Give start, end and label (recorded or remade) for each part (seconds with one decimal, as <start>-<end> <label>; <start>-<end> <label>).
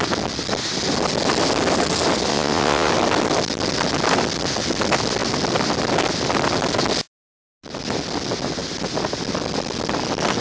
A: 0.0-2.3 recorded; 2.3-2.9 remade; 2.9-10.4 recorded